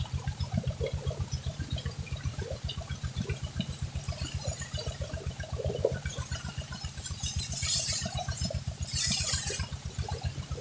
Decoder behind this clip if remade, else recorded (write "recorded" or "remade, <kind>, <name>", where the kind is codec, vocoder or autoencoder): remade, vocoder, BigVGAN v2